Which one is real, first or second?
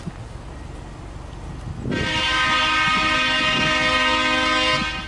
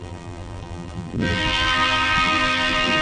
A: first